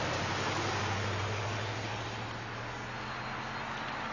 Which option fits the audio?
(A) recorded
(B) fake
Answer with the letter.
A